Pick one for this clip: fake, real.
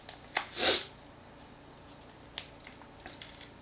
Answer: real